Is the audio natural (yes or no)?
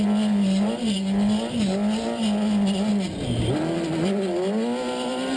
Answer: yes